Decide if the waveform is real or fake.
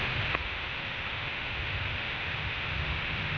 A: fake